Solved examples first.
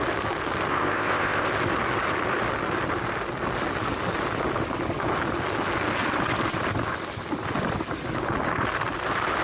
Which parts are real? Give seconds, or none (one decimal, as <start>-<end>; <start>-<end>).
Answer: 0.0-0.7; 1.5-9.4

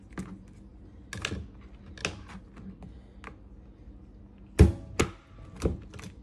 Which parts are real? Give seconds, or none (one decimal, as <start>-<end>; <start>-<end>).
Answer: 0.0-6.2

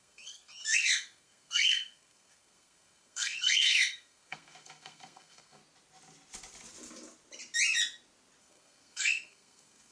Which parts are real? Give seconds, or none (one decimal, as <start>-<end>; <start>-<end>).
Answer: 5.6-8.4

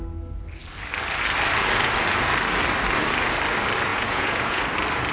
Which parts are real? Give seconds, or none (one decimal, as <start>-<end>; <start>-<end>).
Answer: 0.0-3.9; 4.6-5.1

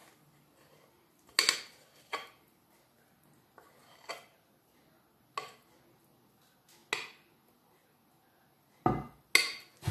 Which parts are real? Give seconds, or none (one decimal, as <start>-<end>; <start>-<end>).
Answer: 0.0-9.9

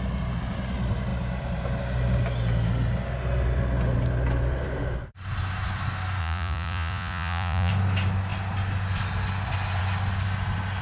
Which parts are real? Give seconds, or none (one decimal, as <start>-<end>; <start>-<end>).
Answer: 0.0-6.2; 7.7-10.8